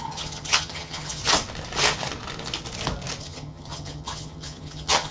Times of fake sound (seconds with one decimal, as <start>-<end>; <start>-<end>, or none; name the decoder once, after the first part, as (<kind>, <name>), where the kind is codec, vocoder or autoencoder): 0.0-1.2 (vocoder, HiFi-GAN); 3.2-5.1